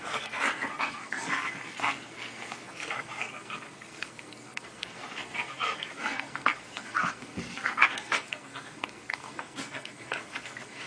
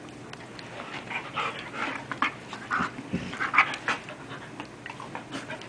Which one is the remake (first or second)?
first